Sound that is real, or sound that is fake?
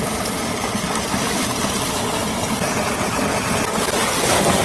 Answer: real